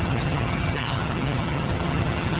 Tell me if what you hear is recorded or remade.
remade